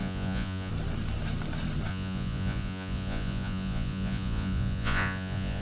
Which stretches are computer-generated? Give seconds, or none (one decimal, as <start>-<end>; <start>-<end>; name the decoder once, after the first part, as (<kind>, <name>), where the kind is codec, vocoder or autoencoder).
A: 0.0-0.7 (vocoder, Vocos); 1.9-5.6